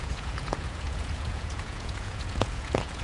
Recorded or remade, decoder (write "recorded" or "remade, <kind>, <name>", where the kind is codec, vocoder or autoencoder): remade, vocoder, Vocos